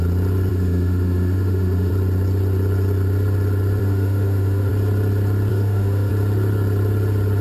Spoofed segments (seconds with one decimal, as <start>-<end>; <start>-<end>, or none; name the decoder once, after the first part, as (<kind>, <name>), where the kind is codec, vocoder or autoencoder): 0.5-1.9 (autoencoder, DAC-VAE); 3.8-4.7; 5.5-6.1